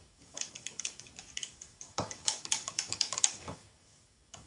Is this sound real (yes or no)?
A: no